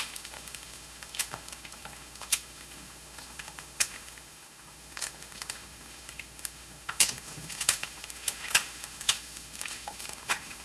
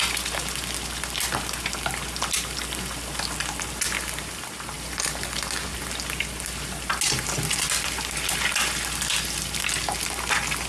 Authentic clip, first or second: second